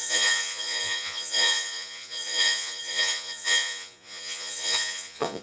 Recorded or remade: remade